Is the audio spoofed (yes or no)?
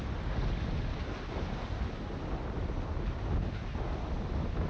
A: no